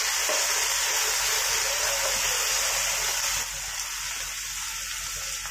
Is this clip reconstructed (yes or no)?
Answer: no